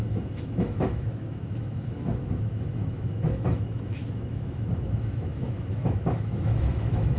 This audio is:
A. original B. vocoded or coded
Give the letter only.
B